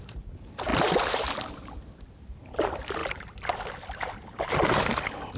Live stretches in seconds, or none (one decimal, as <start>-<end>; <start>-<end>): 0.0-5.4